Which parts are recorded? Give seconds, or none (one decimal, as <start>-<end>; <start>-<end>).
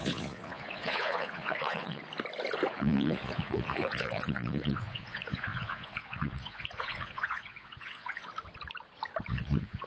2.0-2.7; 8.3-9.3